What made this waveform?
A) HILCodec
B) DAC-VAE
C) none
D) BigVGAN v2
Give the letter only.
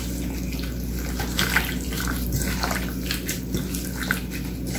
C